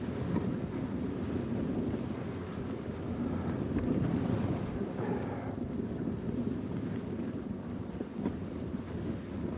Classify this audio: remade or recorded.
recorded